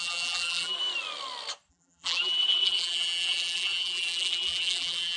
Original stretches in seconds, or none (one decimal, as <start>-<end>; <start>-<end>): 0.8-1.7